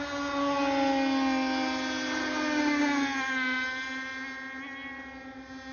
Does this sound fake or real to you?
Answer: real